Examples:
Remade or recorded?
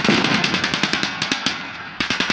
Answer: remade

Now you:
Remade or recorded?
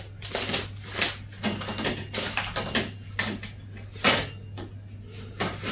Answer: recorded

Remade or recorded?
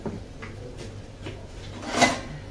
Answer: recorded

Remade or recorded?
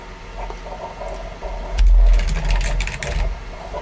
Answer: recorded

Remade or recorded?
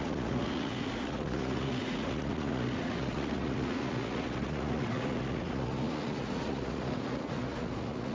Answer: remade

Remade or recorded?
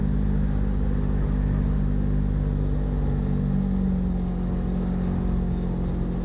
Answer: recorded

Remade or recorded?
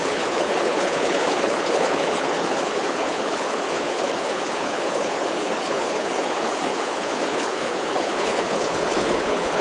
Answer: remade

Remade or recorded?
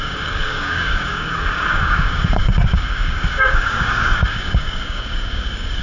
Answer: remade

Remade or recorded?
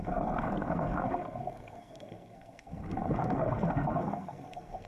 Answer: remade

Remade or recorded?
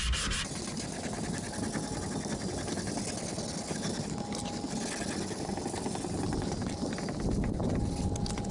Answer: recorded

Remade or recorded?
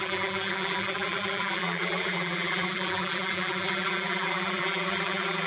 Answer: remade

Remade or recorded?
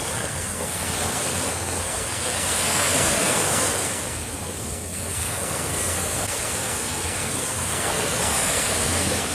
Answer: remade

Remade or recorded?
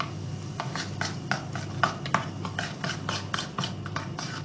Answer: recorded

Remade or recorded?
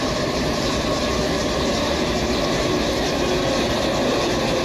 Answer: recorded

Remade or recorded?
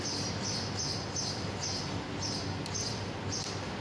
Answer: recorded